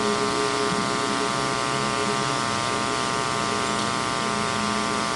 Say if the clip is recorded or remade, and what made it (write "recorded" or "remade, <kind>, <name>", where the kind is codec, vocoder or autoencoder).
recorded